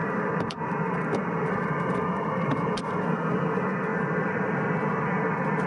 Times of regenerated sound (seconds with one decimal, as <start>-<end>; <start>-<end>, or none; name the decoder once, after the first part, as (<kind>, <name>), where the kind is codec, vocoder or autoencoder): 0.0-3.4 (vocoder, BigVGAN v2); 3.9-4.6